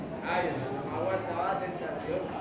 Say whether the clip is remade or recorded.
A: recorded